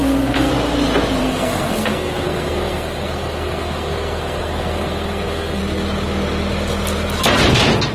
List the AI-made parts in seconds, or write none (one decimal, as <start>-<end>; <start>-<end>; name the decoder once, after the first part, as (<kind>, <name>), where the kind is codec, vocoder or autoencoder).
0.0-0.5 (codec, SNAC); 1.2-5.6